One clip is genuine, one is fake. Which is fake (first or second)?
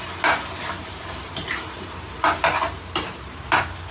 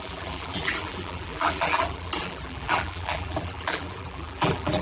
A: second